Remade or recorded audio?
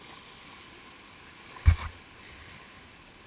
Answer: recorded